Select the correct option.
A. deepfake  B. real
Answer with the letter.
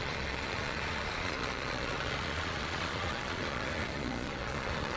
A